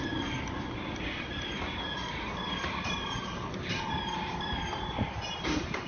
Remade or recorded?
remade